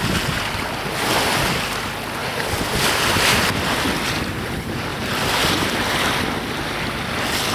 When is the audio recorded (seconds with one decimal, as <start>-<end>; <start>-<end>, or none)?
0.0-2.2; 4.3-4.9; 6.1-7.5